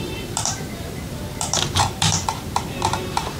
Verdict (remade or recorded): remade